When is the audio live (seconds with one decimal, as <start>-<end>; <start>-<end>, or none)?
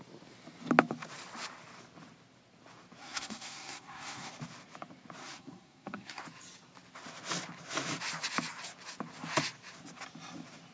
0.0-3.0; 4.3-5.2; 6.2-10.7